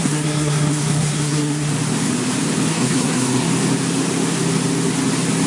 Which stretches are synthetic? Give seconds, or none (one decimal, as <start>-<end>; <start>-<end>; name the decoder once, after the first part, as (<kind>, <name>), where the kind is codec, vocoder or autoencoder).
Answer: 0.0-1.7 (codec, SNAC); 2.7-3.5